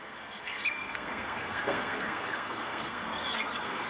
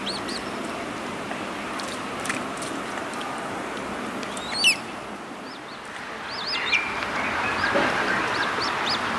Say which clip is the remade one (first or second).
first